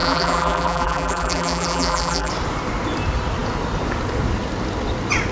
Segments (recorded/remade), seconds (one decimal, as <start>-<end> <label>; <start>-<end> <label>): 0.0-2.3 remade; 2.3-5.3 recorded